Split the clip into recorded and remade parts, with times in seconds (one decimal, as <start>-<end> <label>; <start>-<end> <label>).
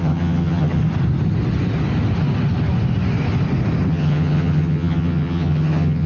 0.0-0.8 remade; 0.8-3.9 recorded; 3.9-6.1 remade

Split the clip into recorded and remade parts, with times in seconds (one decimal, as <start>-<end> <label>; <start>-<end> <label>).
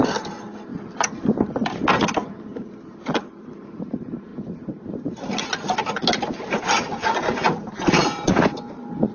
0.0-9.1 recorded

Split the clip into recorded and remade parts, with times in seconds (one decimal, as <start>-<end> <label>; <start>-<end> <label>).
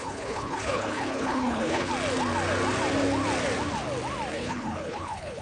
0.0-1.9 remade; 1.9-4.3 recorded; 4.3-5.4 remade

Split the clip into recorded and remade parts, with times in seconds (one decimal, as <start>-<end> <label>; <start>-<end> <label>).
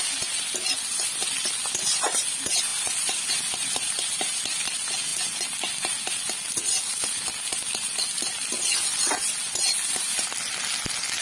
0.0-11.2 recorded